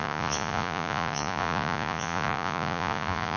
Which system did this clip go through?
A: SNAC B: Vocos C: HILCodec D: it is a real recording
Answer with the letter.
B